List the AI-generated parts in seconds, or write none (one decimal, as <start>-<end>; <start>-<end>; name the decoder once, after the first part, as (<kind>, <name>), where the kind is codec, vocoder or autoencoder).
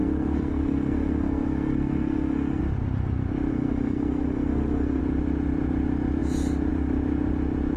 0.0-2.6 (codec, SNAC); 3.5-5.0